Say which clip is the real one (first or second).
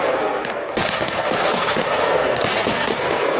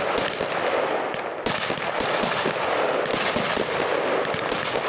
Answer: second